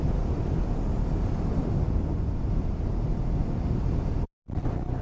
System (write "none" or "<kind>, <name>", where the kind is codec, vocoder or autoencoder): none